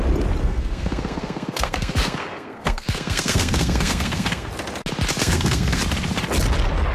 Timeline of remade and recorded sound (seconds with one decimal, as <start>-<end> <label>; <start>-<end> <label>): 0.0-0.4 recorded; 0.4-4.5 remade; 4.5-5.2 recorded; 5.2-5.8 remade; 5.8-6.9 recorded